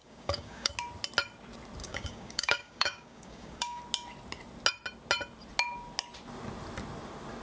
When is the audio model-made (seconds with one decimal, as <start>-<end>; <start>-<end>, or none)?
0.0-0.7; 1.8-3.8